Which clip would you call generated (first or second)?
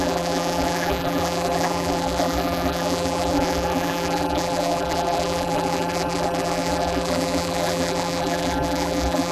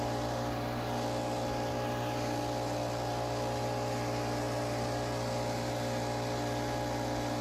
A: first